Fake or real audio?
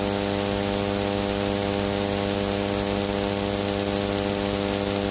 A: real